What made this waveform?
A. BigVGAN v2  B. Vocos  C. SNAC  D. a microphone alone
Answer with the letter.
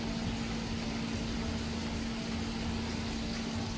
D